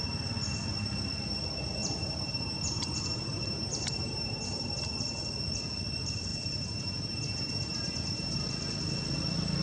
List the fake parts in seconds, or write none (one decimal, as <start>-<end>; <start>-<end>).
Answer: 1.8-4.8; 6.3-8.4